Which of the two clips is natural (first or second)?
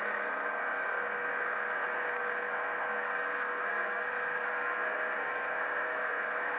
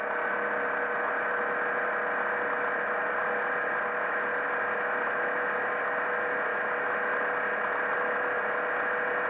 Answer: second